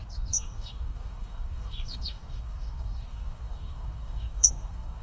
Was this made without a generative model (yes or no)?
no